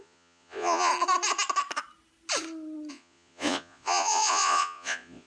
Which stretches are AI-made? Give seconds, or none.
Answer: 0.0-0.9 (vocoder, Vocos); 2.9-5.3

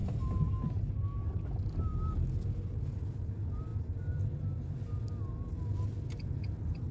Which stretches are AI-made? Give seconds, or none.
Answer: none

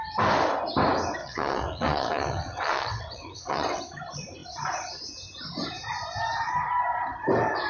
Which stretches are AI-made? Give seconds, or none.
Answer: 1.2-3.8 (vocoder, WaveNeXt)